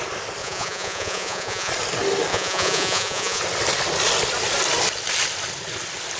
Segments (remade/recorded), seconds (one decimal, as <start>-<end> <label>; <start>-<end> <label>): 0.0-0.4 recorded; 0.4-1.7 remade; 1.7-2.3 recorded; 2.3-3.4 remade; 3.4-6.2 recorded